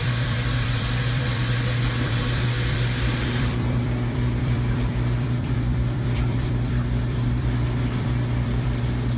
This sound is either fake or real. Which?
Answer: fake